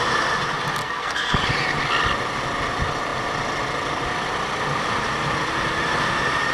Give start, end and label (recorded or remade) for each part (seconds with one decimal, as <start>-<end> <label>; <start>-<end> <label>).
0.0-0.8 recorded; 0.8-1.4 remade; 1.4-6.5 recorded

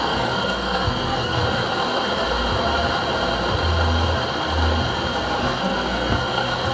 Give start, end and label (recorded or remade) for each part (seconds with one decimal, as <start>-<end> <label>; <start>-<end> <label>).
0.0-1.4 remade; 1.4-5.4 recorded; 5.4-6.7 remade

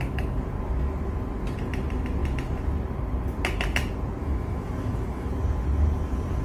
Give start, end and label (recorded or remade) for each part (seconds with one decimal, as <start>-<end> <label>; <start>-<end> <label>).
0.0-4.2 recorded; 4.2-5.3 remade; 5.3-6.4 recorded

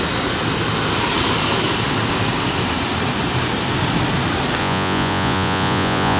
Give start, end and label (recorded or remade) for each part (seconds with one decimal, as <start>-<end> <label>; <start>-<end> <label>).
0.0-4.6 recorded; 4.6-6.2 remade

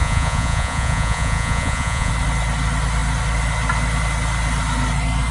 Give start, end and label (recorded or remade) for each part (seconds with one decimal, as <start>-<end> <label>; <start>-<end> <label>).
0.0-2.1 remade; 2.1-5.3 recorded

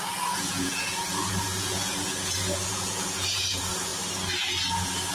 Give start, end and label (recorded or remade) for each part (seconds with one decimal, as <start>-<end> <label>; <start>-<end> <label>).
0.0-3.9 remade; 3.9-5.1 recorded

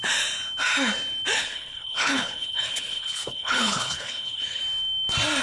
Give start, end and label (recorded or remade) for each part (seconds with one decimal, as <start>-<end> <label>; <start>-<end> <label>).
0.0-1.4 recorded; 1.4-4.6 remade; 4.6-5.4 recorded